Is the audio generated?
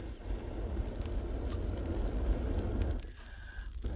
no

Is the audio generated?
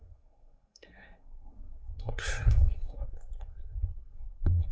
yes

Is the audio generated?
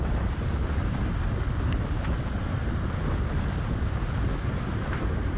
no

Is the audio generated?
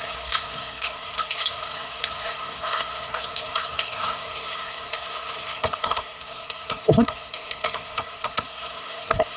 yes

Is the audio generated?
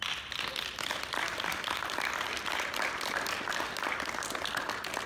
no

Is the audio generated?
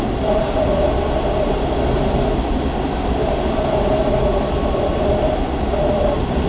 no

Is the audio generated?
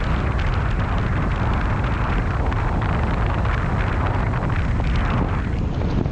no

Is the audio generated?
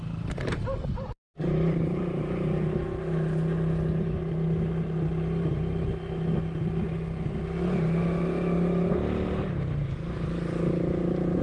no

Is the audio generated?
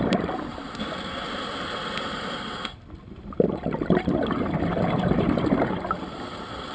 no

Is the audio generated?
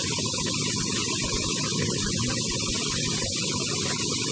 no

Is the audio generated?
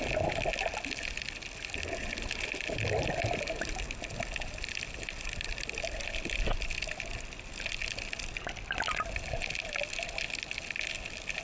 no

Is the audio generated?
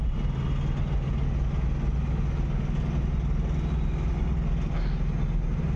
no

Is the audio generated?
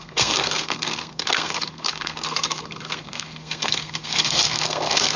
yes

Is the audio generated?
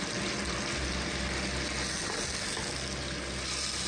no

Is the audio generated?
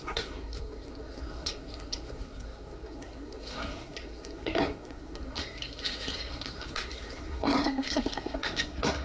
yes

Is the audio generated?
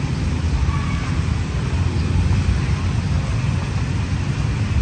no